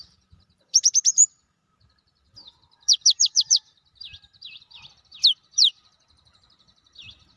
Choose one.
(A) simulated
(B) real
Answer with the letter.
A